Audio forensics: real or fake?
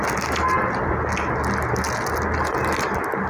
real